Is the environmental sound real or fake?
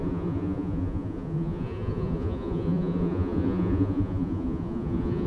fake